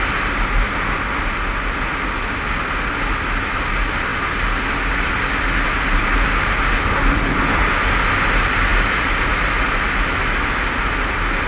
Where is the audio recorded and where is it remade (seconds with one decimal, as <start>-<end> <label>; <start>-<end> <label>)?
0.0-11.5 recorded